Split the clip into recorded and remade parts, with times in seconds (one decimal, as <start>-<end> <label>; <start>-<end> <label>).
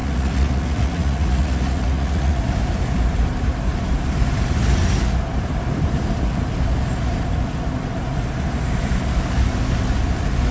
0.0-2.4 remade; 2.4-10.5 recorded